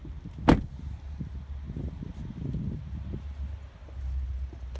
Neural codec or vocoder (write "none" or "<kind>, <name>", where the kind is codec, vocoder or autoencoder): none